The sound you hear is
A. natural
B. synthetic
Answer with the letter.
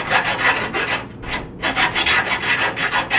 A